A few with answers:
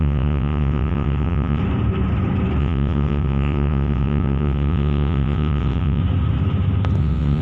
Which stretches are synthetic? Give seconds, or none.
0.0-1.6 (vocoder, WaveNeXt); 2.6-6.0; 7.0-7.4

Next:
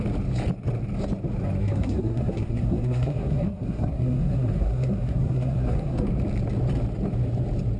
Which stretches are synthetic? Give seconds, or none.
1.6-6.1 (codec, SNAC)

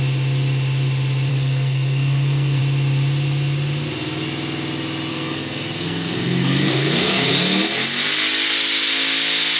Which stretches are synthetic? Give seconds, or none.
1.3-2.6 (codec, SNAC); 5.1-7.3

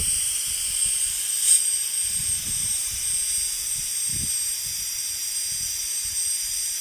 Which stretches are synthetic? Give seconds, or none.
none